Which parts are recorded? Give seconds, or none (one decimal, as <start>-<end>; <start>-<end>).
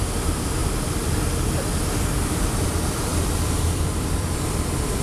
0.0-3.1